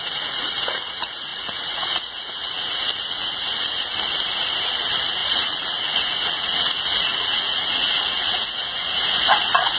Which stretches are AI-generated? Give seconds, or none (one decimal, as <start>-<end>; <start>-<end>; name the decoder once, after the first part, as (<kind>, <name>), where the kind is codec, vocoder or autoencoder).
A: 0.0-3.9 (vocoder, Vocos); 4.7-9.8